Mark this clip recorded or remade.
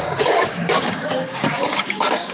remade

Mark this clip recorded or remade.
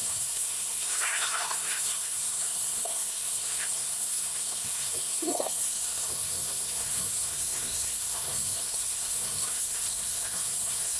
remade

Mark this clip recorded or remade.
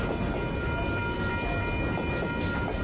recorded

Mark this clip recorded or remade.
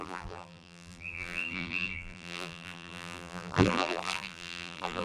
remade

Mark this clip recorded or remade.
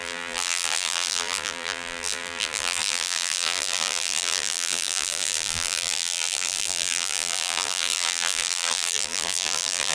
remade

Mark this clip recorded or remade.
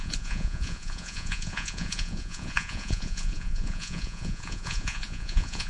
remade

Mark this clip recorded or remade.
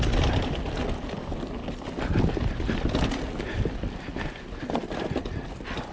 recorded